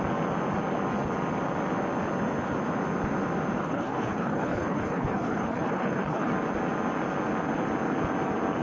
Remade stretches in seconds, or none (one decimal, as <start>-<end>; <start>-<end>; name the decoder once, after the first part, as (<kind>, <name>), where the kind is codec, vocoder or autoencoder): 3.6-6.3 (codec, HILCodec)